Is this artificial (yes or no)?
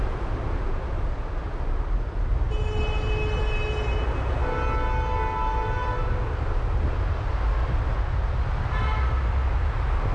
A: no